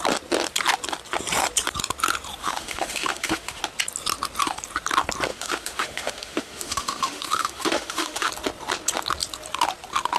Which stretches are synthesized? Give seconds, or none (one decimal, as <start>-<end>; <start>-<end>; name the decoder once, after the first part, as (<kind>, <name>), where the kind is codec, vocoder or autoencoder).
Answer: 2.4-3.6 (autoencoder, DAC-VAE); 5.3-8.3